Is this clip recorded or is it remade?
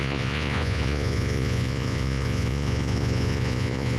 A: remade